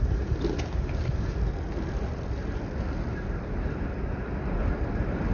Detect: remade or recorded recorded